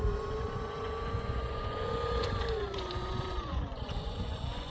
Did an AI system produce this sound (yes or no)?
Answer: yes